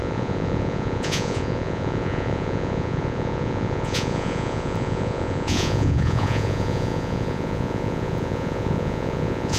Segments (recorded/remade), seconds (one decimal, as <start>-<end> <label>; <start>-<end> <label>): 0.0-9.6 remade